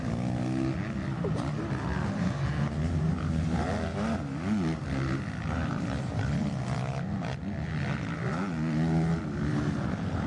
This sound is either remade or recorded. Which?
recorded